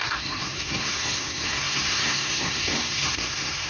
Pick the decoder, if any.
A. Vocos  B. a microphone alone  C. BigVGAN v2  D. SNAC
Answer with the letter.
D